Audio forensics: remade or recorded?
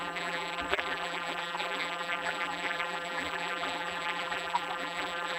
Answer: remade